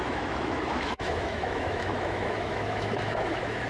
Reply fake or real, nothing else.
fake